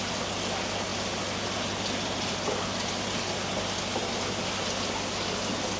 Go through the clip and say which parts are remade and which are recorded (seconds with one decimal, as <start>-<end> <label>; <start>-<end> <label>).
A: 0.0-5.8 recorded